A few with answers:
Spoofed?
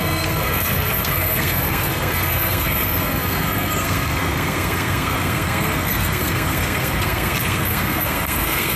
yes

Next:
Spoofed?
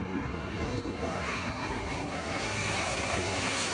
yes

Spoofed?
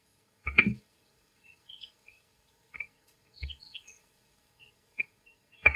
yes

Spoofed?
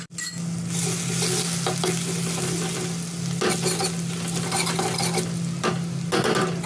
no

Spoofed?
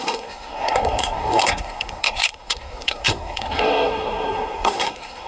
yes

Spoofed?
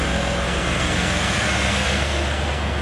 yes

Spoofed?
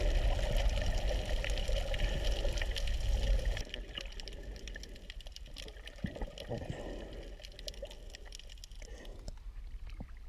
no